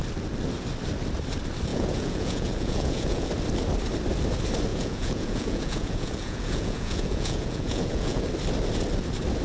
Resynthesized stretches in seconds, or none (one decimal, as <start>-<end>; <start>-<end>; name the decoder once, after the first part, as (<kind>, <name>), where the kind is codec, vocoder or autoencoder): 1.7-3.3 (vocoder, Vocos); 4.7-8.2